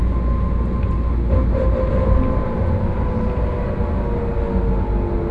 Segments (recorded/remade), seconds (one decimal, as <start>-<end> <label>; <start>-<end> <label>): 0.0-5.3 recorded